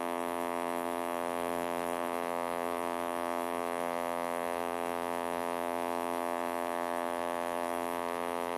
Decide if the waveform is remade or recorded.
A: remade